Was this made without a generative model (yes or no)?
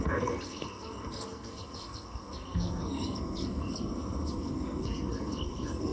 no